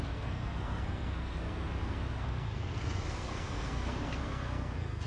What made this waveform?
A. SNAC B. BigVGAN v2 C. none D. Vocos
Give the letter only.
A